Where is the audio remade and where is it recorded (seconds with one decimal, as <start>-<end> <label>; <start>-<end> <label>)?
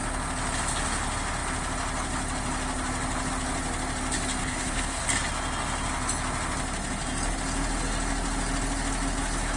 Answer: 0.0-4.4 recorded; 4.4-5.0 remade; 5.0-9.6 recorded